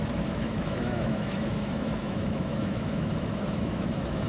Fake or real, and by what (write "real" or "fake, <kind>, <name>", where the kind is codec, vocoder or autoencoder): fake, autoencoder, DAC-VAE